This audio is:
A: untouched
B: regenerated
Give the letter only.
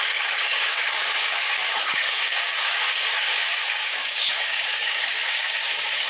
B